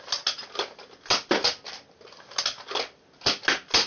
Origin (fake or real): real